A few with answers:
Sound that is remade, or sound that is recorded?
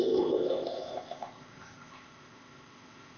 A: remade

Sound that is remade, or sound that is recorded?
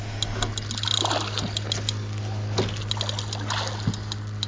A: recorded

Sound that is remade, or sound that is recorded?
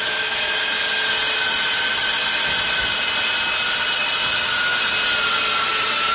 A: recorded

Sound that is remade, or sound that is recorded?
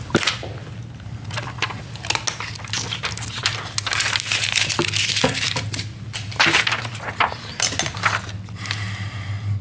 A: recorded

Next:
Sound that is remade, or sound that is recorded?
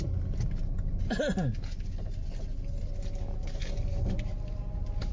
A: recorded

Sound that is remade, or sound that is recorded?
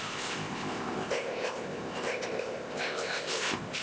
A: remade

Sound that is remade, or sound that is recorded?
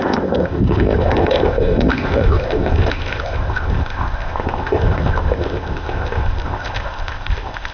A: remade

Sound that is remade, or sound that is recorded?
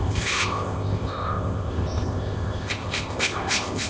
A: remade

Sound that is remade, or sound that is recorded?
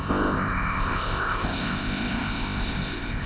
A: remade